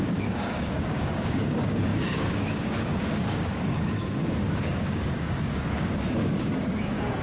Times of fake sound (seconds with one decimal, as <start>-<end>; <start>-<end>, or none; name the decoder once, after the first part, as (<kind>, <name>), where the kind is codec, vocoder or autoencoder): 0.0-7.2 (codec, DAC)